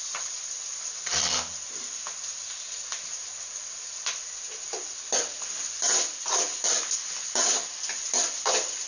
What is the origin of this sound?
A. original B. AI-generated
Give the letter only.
A